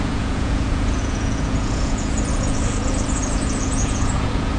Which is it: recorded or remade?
remade